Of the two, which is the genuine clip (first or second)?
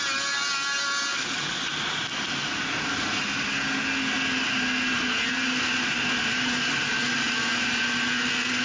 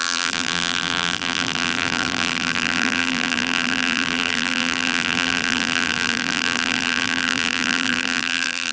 first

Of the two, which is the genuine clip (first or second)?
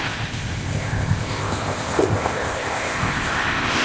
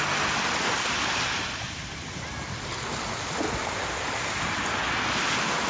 second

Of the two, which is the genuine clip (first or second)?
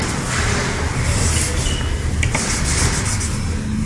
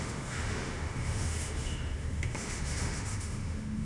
first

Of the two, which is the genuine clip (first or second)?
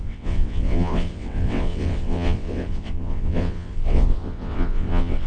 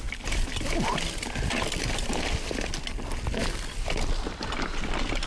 second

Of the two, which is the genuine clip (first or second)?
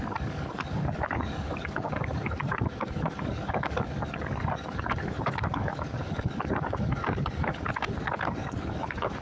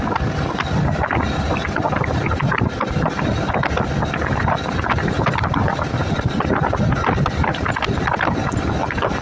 second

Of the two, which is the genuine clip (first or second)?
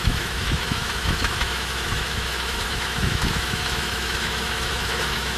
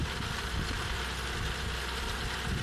second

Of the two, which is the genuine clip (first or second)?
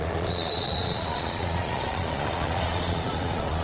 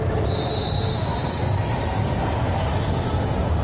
second